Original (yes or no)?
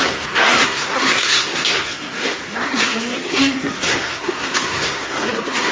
no